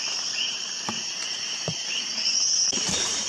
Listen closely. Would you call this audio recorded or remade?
remade